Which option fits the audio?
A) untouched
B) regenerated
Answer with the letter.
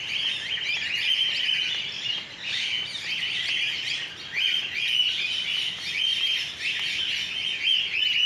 A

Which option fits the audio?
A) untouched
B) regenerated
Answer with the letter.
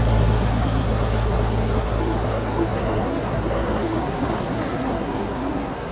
B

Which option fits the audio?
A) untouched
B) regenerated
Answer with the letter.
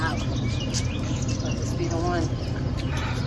A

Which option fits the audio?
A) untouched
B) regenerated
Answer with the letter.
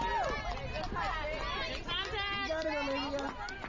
A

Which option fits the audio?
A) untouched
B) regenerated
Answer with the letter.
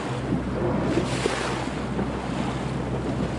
A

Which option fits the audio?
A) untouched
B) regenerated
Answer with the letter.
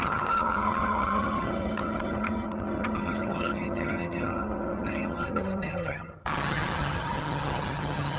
B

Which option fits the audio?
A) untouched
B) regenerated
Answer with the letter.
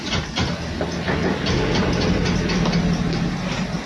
A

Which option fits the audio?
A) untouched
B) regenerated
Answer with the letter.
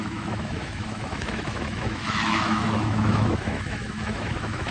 B